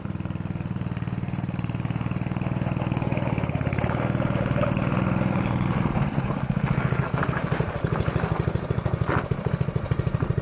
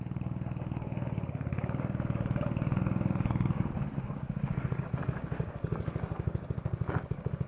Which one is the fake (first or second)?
second